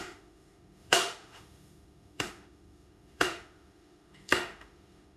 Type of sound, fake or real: fake